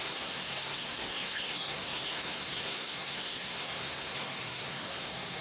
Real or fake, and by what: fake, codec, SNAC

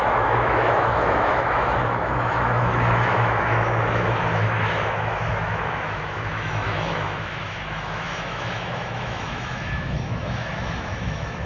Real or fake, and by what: fake, autoencoder, DAC-VAE